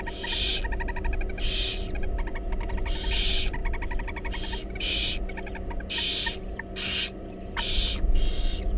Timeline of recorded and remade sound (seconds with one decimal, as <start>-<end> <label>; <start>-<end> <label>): 0.0-8.8 recorded